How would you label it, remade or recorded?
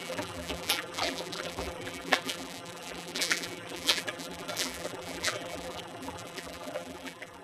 remade